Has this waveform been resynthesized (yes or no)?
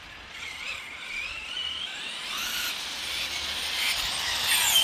no